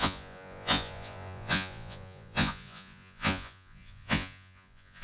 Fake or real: fake